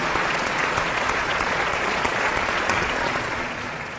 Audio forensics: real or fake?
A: fake